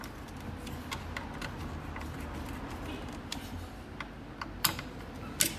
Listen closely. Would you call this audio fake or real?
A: real